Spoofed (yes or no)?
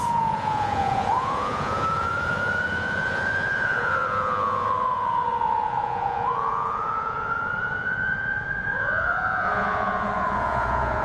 yes